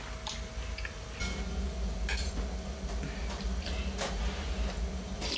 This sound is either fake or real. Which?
real